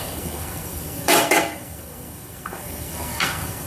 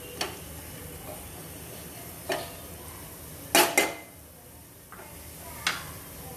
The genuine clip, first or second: second